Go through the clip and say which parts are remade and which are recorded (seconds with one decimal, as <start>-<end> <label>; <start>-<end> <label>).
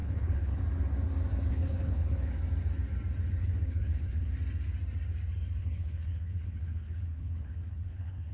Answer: 0.0-0.6 remade; 0.6-1.5 recorded; 1.5-2.3 remade; 2.3-3.4 recorded; 3.4-4.3 remade; 4.3-5.6 recorded; 5.6-8.3 remade